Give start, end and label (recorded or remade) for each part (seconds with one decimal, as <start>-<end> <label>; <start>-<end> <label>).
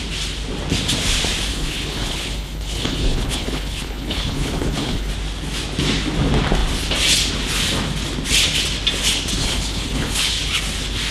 0.0-1.5 recorded; 1.5-5.1 remade; 5.1-9.4 recorded; 9.4-10.3 remade; 10.3-11.1 recorded